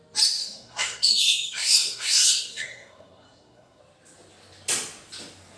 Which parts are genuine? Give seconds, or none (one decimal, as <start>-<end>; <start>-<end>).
0.0-0.4; 3.8-5.6